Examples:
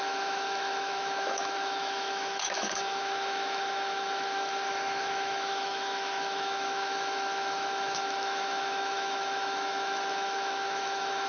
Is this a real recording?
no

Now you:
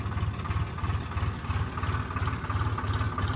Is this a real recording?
yes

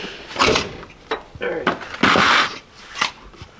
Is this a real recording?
yes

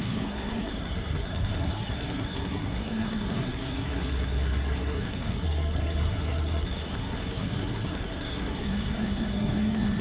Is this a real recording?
no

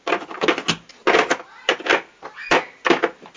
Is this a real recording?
yes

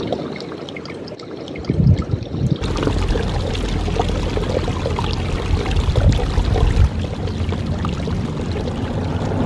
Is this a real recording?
yes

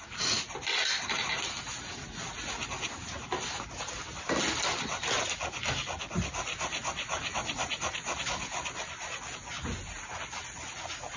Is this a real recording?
yes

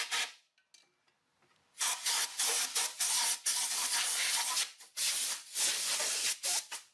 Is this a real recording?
yes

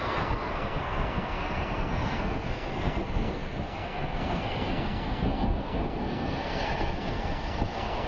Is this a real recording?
no